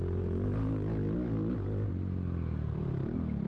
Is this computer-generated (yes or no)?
no